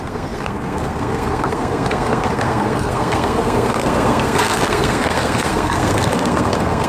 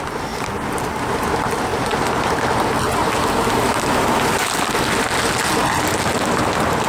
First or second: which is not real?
first